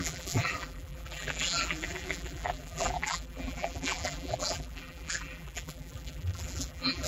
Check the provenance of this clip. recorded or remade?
remade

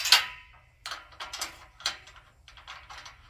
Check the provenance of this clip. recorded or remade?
recorded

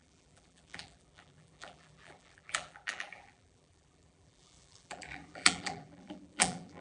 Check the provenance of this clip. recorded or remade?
remade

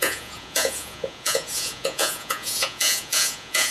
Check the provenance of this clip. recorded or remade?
remade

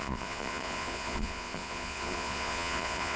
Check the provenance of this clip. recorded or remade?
remade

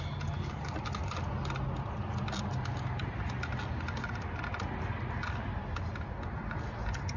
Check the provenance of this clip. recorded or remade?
recorded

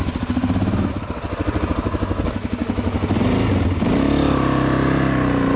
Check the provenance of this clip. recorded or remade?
recorded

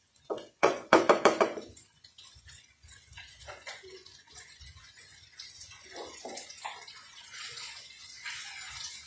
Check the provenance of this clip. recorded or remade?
remade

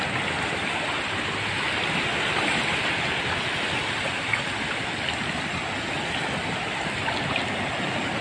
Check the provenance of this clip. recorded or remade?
recorded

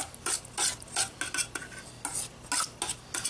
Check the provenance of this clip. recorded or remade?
recorded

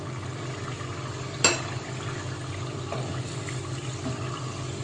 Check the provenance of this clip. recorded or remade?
recorded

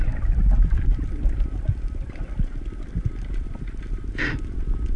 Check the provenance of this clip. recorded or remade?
recorded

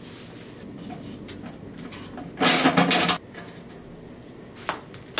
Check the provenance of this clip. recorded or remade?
recorded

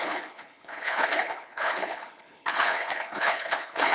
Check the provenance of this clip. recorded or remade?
remade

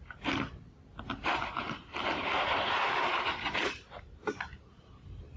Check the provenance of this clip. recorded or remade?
recorded